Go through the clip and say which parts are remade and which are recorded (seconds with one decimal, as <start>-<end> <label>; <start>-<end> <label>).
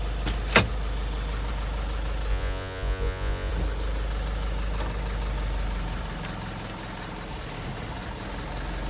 0.0-2.3 recorded; 2.3-3.5 remade; 3.5-8.9 recorded